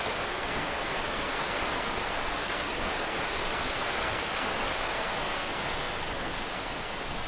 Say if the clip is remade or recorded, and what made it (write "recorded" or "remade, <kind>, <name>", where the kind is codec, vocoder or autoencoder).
remade, codec, SNAC